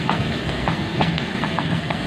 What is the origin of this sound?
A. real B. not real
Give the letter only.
B